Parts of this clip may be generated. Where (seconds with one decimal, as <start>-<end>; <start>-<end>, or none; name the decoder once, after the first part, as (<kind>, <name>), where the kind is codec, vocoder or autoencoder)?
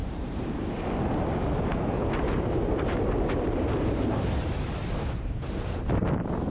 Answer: 0.0-0.6 (vocoder, BigVGAN v2); 1.7-5.4